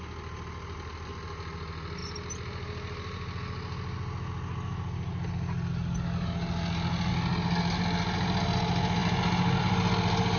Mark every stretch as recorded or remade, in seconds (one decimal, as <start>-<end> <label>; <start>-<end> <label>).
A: 0.0-10.4 recorded